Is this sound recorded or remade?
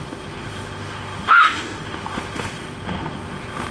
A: remade